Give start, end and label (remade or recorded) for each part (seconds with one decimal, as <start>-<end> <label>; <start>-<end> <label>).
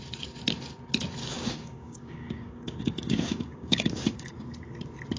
0.0-1.2 recorded; 1.2-4.3 remade; 4.3-5.2 recorded